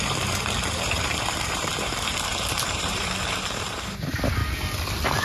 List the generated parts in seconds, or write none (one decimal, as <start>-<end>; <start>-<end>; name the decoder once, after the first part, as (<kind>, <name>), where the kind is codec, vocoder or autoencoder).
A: 0.0-4.4 (vocoder, BigVGAN v2)